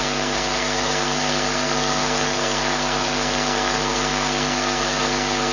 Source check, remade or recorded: remade